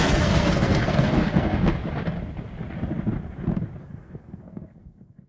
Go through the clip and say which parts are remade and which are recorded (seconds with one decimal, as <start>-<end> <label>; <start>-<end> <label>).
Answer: 0.0-1.7 remade; 1.7-3.8 recorded; 3.8-5.3 remade